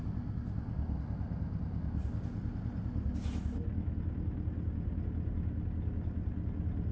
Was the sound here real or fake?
real